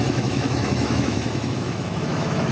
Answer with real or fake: fake